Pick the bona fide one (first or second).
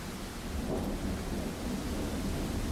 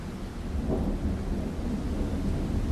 second